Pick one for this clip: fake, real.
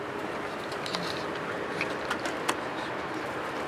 real